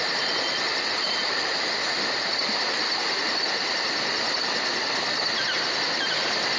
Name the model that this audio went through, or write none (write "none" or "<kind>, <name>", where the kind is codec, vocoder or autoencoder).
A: none